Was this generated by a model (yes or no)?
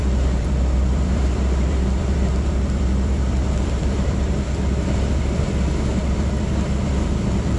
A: yes